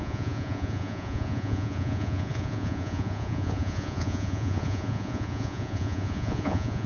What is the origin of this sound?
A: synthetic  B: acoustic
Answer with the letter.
A